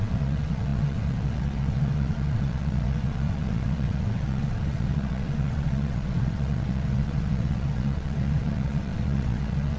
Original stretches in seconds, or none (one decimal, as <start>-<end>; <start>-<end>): none